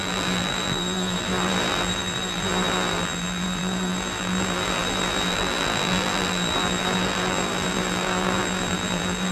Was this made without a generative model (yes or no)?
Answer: no